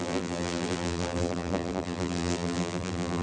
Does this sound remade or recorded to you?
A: remade